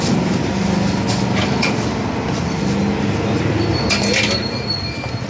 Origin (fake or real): real